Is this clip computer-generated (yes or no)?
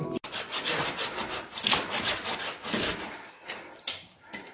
no